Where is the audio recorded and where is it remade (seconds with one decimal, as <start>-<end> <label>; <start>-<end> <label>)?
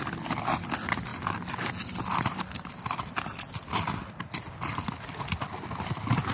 0.0-6.3 recorded